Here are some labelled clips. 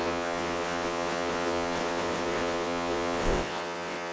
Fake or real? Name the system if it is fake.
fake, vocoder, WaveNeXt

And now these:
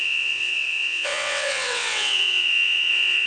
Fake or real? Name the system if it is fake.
fake, vocoder, WaveNeXt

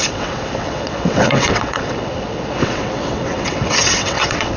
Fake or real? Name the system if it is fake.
fake, vocoder, WaveNeXt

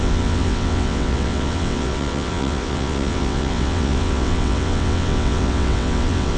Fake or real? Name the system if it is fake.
fake, vocoder, WaveNeXt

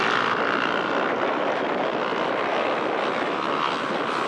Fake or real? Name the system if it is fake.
real